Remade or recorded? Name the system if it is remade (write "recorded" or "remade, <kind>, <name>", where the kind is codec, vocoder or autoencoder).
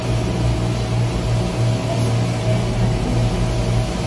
recorded